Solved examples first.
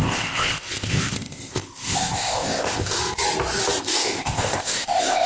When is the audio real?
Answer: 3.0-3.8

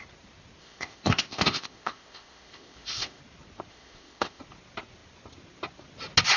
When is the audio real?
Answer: 0.0-0.6; 3.2-3.7; 4.4-6.4

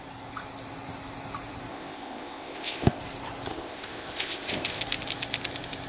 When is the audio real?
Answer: 0.0-1.7; 3.0-3.5; 4.8-5.9

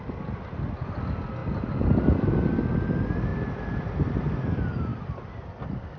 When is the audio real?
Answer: 0.0-6.0

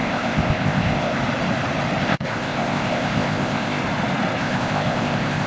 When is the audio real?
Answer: 1.2-2.0; 3.8-4.4